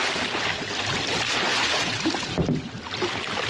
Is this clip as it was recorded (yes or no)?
no